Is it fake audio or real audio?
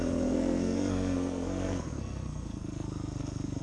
fake